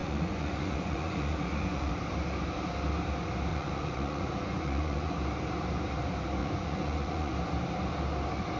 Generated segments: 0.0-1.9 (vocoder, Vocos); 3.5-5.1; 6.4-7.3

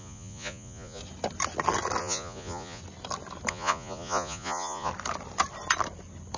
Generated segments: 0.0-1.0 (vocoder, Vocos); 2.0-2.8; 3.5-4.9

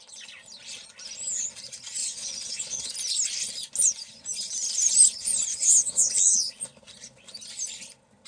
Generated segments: 2.0-2.9 (vocoder, Vocos); 5.5-6.1

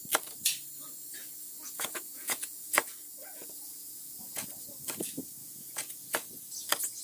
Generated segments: 1.2-4.5 (vocoder, Vocos); 5.4-6.5